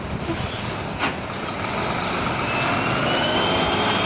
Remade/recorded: recorded